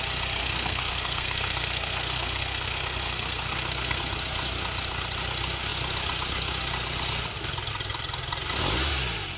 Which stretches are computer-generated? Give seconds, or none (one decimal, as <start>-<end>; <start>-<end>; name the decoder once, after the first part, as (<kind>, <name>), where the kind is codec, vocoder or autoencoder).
0.4-4.0 (codec, SNAC)